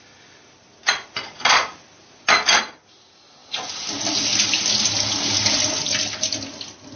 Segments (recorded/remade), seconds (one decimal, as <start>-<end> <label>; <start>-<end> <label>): 0.0-0.8 recorded; 0.8-1.6 remade; 1.6-7.0 recorded